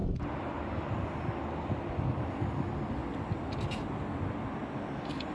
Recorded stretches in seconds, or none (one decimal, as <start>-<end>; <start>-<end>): 0.0-5.3